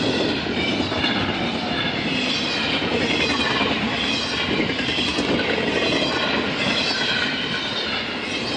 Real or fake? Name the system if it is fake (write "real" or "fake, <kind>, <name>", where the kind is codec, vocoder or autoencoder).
real